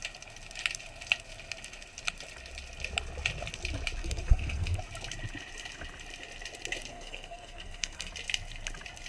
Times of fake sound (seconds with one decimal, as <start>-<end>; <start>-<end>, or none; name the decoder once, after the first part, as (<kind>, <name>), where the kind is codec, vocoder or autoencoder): 4.0-4.8 (codec, SNAC); 6.9-8.1